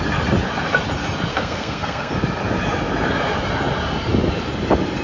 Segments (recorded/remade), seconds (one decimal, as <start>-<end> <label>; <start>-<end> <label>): 0.0-1.3 recorded; 1.3-2.1 remade; 2.1-5.0 recorded